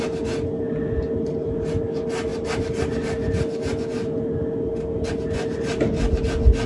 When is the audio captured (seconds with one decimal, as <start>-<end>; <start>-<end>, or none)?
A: 0.0-6.7